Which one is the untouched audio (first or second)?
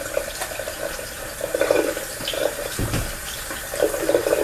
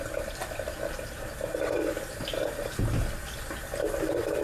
second